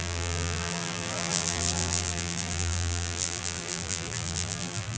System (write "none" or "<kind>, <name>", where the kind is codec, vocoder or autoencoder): vocoder, BigVGAN v2